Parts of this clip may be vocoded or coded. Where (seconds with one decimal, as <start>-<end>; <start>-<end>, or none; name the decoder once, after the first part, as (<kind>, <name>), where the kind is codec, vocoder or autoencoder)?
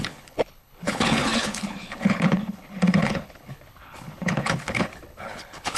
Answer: 0.0-5.8 (codec, HILCodec)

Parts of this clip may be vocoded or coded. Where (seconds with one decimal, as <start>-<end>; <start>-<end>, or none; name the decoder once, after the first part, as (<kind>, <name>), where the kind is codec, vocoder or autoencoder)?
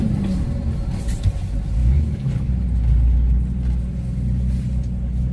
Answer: 1.8-2.5 (codec, DAC)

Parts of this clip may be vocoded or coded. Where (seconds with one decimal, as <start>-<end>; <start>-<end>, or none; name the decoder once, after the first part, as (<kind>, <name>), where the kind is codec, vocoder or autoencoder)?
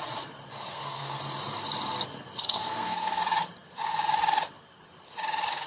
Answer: 0.7-1.2 (codec, SNAC); 2.4-3.2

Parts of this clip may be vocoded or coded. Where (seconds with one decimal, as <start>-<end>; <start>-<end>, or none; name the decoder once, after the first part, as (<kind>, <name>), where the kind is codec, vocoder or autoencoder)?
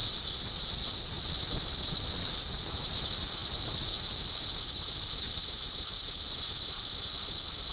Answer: 0.0-1.1 (vocoder, Vocos)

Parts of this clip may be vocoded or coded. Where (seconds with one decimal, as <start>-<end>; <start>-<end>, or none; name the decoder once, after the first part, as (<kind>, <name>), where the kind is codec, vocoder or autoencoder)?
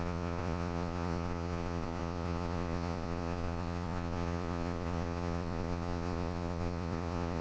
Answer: 0.0-7.4 (vocoder, Vocos)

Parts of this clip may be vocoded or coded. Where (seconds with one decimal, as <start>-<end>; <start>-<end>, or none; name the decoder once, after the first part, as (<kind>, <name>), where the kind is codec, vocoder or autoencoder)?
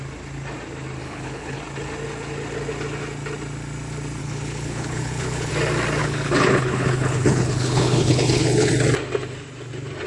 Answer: 1.0-1.6 (codec, HILCodec); 4.2-5.5; 6.0-8.7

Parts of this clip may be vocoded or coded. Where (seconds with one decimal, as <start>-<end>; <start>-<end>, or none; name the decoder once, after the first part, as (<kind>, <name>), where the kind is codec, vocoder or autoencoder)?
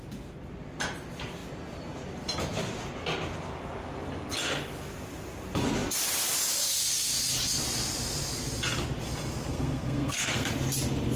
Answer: 9.5-10.5 (codec, SNAC)